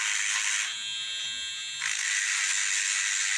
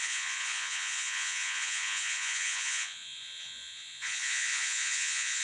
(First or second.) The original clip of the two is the first